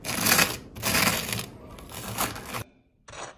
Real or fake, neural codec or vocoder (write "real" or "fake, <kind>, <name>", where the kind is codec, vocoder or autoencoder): real